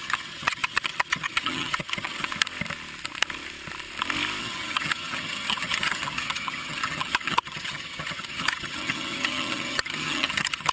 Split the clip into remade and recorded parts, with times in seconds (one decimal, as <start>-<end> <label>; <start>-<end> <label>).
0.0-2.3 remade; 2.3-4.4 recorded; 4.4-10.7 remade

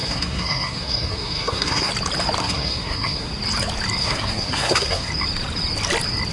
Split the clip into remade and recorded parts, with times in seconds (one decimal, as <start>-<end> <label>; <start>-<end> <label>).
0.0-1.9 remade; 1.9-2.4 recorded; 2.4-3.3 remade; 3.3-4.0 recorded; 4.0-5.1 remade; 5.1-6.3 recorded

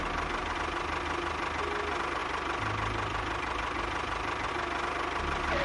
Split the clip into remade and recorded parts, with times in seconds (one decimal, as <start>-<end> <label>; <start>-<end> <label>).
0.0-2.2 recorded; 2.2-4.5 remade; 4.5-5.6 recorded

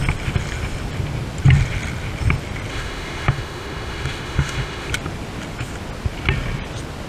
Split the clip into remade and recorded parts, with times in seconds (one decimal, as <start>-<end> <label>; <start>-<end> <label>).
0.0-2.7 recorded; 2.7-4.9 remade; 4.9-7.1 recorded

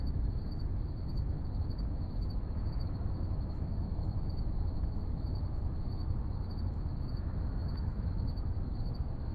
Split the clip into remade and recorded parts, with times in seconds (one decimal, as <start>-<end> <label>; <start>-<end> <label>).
0.0-9.3 remade

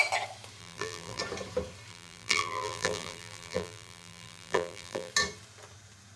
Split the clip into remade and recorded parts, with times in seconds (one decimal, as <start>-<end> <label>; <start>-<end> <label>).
0.0-0.6 recorded; 0.6-1.2 remade; 1.2-1.9 recorded; 1.9-5.1 remade; 5.1-6.2 recorded

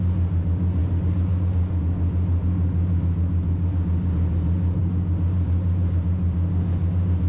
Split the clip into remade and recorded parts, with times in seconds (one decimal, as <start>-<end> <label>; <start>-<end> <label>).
0.0-7.3 recorded